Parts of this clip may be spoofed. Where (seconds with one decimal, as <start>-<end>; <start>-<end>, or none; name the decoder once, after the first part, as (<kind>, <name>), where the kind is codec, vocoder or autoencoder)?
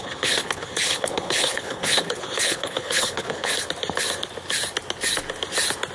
0.0-3.5 (codec, HILCodec)